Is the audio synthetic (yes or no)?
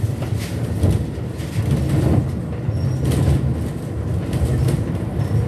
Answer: no